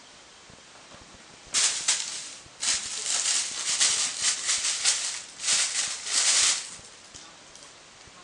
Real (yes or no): yes